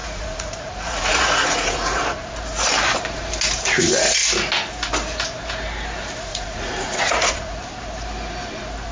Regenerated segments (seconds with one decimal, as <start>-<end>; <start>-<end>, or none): 0.0-2.0; 6.3-7.5